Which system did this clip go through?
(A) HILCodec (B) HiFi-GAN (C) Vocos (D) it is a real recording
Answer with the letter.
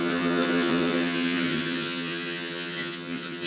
B